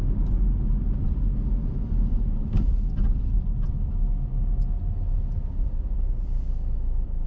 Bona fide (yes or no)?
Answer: yes